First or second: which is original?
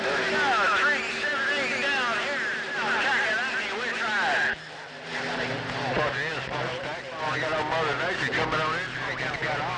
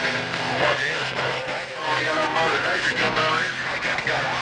first